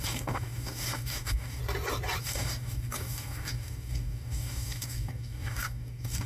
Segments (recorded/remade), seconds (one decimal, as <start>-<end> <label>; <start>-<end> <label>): 0.0-1.6 remade; 1.6-2.2 recorded; 2.2-6.3 remade